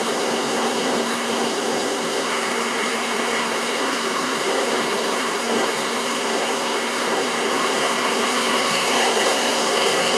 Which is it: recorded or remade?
remade